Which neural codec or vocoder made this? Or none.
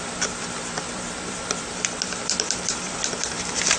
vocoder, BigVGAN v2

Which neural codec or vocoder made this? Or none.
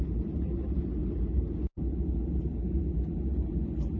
none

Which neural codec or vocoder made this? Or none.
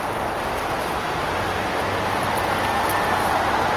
none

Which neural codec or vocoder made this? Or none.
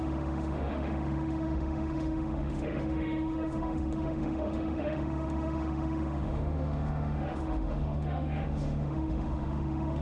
autoencoder, DAC-VAE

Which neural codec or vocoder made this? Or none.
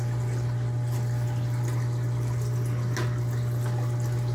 none